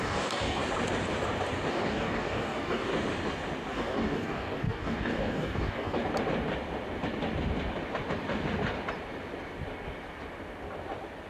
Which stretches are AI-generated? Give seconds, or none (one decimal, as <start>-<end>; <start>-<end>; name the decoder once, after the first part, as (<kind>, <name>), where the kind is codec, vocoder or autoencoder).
0.0-0.6 (codec, DAC); 1.7-2.9; 3.7-6.0